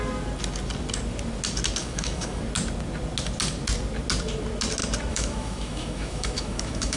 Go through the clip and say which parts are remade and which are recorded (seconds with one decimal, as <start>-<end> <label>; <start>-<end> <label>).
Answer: 0.0-1.8 recorded; 1.8-2.4 remade; 2.4-5.1 recorded; 5.1-7.0 remade